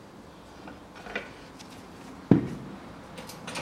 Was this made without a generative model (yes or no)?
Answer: yes